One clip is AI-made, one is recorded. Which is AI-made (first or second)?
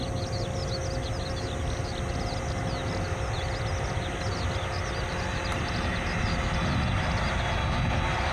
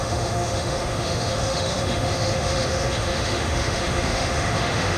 second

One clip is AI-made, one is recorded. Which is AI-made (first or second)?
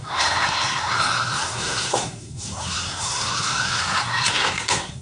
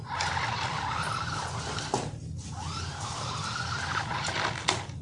first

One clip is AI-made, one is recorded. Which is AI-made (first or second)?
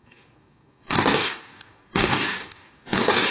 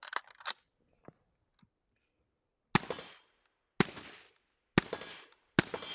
first